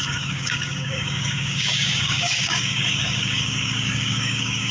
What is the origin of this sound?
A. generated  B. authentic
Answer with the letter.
A